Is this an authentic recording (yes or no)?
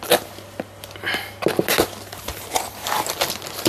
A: yes